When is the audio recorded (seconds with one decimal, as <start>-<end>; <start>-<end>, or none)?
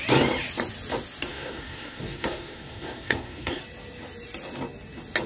0.0-1.3; 3.6-5.3